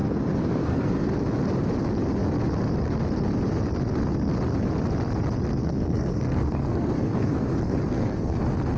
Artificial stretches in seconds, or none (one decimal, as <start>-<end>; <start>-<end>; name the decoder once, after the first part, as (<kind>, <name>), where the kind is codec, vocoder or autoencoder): 0.0-1.1 (codec, SNAC); 5.6-8.4